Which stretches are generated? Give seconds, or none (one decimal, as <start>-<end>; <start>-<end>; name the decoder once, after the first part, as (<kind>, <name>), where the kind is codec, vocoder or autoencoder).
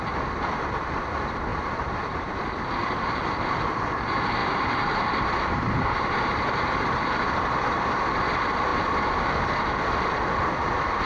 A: 1.5-2.4 (vocoder, BigVGAN v2); 4.4-8.0